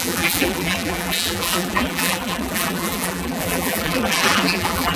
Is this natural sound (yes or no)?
no